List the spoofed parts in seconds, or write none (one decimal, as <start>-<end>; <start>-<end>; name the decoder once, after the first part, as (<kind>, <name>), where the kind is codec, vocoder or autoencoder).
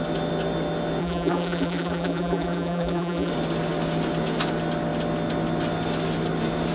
1.0-3.3 (vocoder, BigVGAN v2)